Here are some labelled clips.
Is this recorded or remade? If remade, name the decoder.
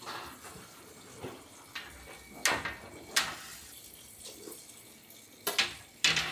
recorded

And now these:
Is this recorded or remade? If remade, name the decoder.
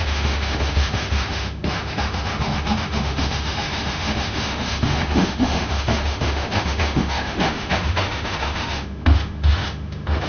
remade, autoencoder, DAC-VAE